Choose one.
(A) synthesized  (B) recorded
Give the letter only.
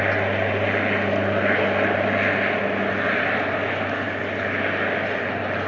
B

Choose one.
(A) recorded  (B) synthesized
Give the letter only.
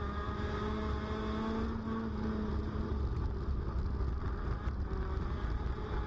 A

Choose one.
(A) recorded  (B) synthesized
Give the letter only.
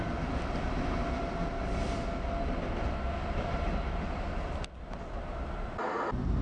A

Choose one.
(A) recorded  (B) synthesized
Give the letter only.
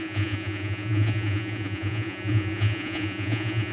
B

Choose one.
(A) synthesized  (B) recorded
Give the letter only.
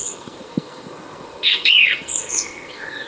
A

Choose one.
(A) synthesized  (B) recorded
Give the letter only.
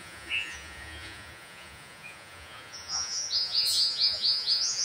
A